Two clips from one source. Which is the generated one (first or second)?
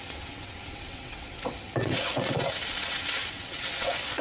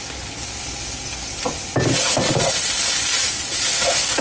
first